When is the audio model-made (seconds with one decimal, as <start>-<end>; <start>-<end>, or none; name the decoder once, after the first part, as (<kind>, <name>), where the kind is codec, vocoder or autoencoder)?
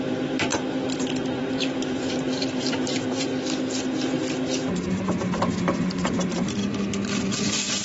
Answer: 0.0-3.3 (vocoder, BigVGAN v2); 4.9-6.6; 7.2-7.8